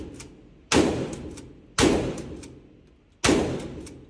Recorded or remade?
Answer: recorded